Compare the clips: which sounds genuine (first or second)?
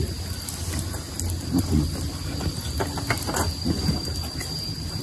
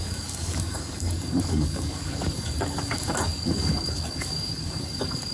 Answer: first